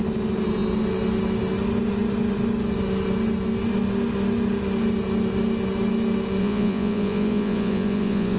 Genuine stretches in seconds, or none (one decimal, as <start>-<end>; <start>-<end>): 0.0-6.4

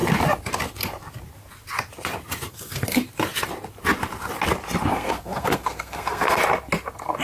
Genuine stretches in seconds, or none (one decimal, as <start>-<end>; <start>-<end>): 0.0-2.5; 3.0-4.9; 6.4-7.2

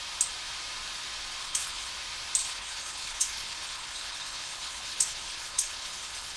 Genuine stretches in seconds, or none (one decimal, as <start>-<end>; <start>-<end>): 0.0-1.4; 1.9-2.4